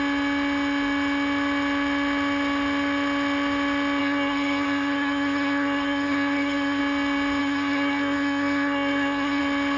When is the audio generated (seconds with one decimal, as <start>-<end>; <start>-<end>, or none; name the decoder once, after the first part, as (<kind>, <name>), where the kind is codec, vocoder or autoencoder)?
4.0-6.8 (codec, SNAC); 7.4-9.4